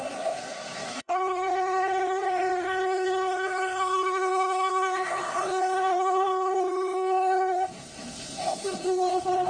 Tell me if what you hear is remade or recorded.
remade